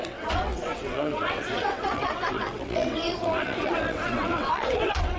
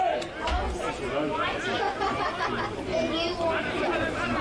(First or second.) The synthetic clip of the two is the first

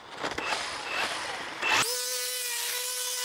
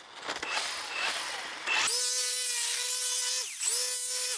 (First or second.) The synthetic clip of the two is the first